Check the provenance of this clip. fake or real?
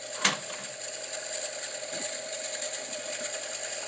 real